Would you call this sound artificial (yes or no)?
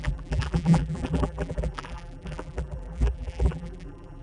yes